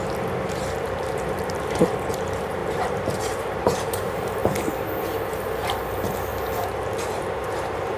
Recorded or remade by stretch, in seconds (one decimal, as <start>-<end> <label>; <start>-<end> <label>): 0.0-4.4 remade; 4.4-5.3 recorded; 5.3-6.3 remade; 6.3-7.4 recorded; 7.4-8.0 remade